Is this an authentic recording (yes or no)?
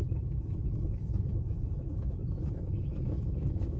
no